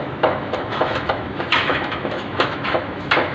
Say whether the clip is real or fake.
fake